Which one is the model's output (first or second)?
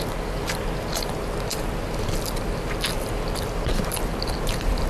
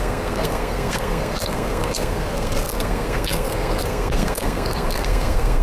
second